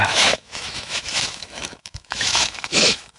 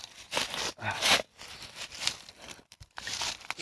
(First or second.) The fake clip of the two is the first